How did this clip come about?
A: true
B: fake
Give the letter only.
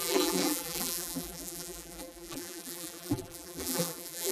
B